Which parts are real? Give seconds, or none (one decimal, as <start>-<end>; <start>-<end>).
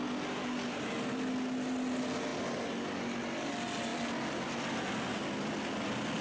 0.0-6.2